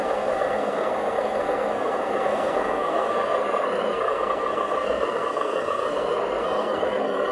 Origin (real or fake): fake